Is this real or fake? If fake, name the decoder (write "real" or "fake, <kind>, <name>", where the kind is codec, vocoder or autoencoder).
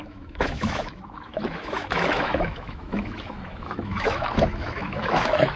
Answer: fake, autoencoder, DAC-VAE